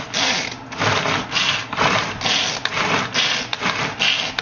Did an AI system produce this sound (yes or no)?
no